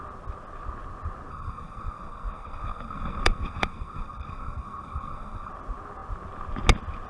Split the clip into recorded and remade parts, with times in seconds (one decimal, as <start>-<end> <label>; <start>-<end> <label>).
0.0-1.3 recorded; 1.3-5.5 remade; 5.5-7.1 recorded